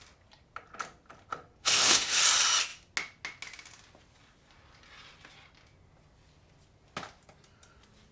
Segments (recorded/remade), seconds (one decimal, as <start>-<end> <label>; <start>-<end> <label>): 0.0-1.6 recorded; 1.6-2.2 remade; 2.2-8.1 recorded